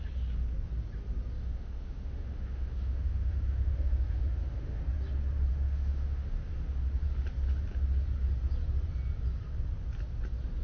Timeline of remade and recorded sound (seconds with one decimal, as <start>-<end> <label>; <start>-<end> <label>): 0.0-1.4 recorded; 1.4-4.8 remade; 4.8-5.5 recorded; 5.5-6.5 remade; 6.5-10.6 recorded

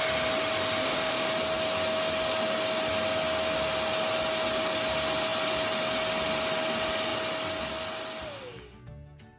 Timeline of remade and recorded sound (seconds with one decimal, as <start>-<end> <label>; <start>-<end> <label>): 0.0-0.8 recorded; 0.8-1.3 remade; 1.3-9.4 recorded

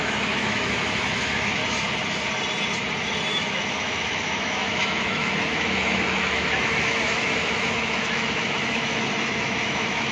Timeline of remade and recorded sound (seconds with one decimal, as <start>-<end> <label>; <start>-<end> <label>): 0.0-1.6 remade; 1.6-3.3 recorded; 3.3-10.1 remade

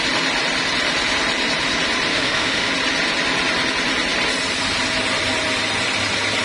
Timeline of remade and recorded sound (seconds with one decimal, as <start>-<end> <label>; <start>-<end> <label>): 0.0-2.1 recorded; 2.1-2.7 remade; 2.7-6.4 recorded

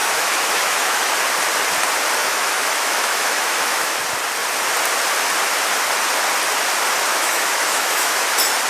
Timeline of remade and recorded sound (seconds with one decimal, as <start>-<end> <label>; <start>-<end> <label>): 0.0-1.1 remade; 1.1-2.2 recorded; 2.2-3.9 remade; 3.9-7.1 recorded; 7.1-8.2 remade; 8.2-8.7 recorded

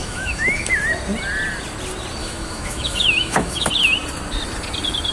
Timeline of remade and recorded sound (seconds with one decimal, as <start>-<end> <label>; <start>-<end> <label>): 0.0-0.7 remade; 0.7-2.2 recorded; 2.2-3.7 remade; 3.7-5.1 recorded

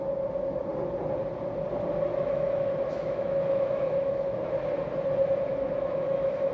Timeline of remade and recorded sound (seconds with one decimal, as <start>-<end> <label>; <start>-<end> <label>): 0.0-2.1 recorded; 2.1-4.4 remade; 4.4-5.5 recorded; 5.5-6.5 remade